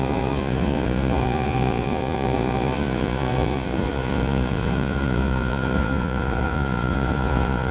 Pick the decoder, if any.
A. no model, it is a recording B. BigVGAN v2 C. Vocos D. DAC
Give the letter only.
C